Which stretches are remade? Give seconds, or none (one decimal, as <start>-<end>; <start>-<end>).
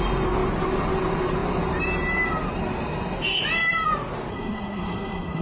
4.3-5.4